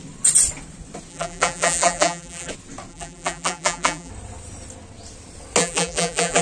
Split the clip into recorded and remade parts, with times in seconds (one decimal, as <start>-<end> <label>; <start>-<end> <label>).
0.0-1.1 recorded; 1.1-2.5 remade; 2.5-2.9 recorded; 2.9-4.1 remade; 4.1-5.6 recorded; 5.6-6.4 remade